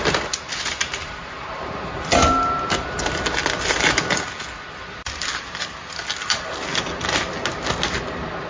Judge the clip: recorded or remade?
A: recorded